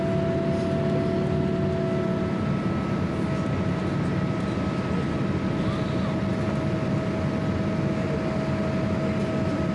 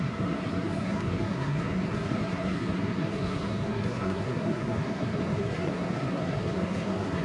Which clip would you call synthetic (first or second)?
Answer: second